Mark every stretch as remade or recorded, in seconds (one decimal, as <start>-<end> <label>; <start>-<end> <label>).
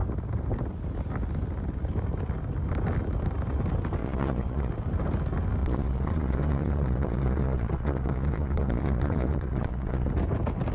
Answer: 0.0-4.0 recorded; 4.0-4.7 remade; 4.7-5.6 recorded; 5.6-10.1 remade; 10.1-10.7 recorded